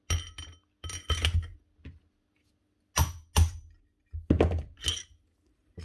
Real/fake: real